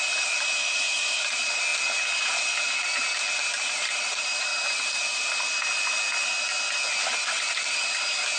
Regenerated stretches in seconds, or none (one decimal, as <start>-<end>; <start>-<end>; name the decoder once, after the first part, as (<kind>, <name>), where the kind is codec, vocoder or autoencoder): 0.0-1.7 (vocoder, BigVGAN v2); 3.5-4.5; 7.0-8.4